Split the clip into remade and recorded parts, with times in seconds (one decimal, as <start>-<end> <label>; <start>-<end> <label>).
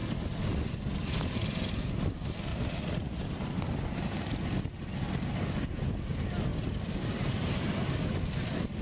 0.0-2.5 recorded; 2.5-3.2 remade; 3.2-8.8 recorded